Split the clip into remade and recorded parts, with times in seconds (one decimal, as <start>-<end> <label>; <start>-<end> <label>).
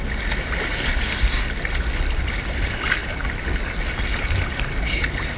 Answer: 0.0-5.4 recorded